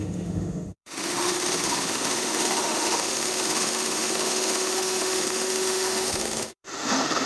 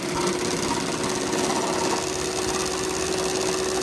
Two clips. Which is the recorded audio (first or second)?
second